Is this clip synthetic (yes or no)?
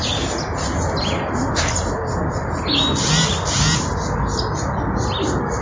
no